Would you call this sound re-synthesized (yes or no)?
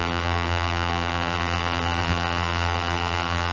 yes